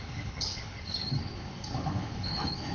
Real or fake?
fake